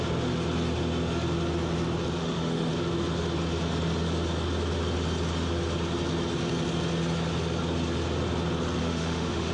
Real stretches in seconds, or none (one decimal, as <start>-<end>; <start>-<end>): 0.0-2.2; 2.7-8.8